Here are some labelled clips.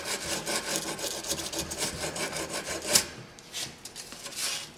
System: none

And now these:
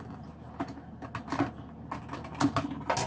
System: none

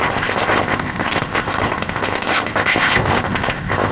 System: codec, ZipCodec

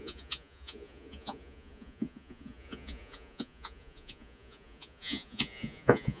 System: vocoder, Vocos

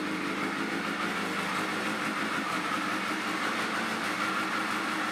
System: none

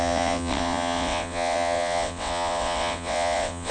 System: vocoder, WaveNeXt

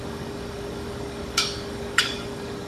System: codec, DAC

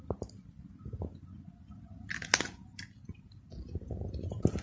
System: none